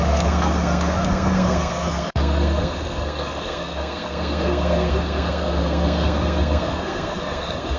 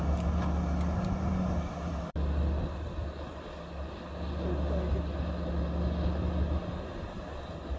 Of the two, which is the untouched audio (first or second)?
second